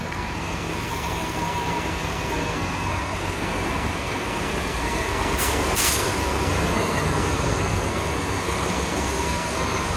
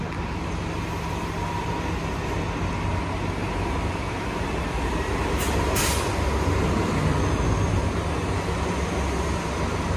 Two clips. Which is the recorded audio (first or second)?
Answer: second